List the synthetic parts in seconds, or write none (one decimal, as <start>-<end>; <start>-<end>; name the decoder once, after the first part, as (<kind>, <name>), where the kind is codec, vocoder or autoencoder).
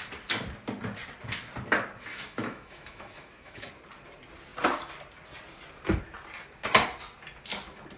2.1-3.7 (autoencoder, DAC-VAE)